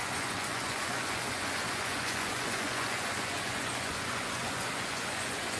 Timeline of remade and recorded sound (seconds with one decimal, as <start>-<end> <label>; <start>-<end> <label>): 0.0-5.6 remade